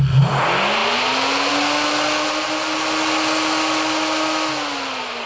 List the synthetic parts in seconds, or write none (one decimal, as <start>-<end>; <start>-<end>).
none